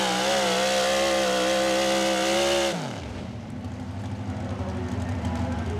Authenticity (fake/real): real